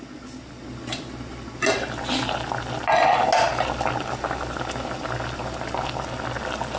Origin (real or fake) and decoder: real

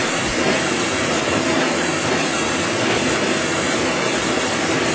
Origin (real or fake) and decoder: real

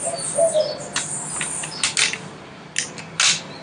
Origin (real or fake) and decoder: real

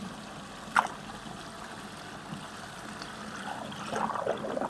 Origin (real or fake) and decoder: real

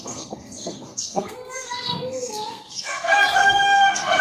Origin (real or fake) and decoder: fake, codec, SNAC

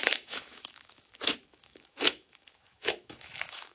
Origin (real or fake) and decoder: fake, autoencoder, DAC-VAE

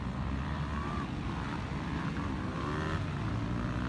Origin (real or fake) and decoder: real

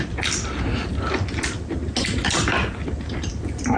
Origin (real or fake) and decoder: real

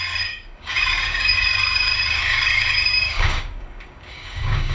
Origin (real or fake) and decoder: fake, codec, DAC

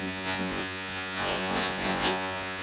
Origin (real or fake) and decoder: fake, vocoder, Vocos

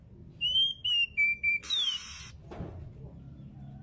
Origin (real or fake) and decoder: real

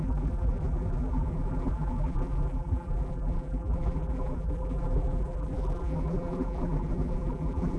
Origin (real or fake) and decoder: fake, vocoder, BigVGAN v2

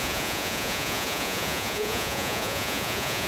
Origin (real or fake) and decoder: fake, vocoder, Vocos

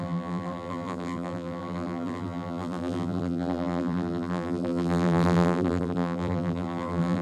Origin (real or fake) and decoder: fake, vocoder, BigVGAN v2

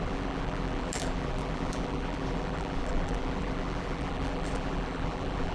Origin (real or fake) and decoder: fake, vocoder, BigVGAN v2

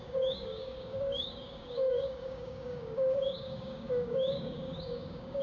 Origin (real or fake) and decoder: fake, codec, DAC